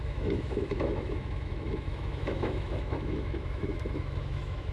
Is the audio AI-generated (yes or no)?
yes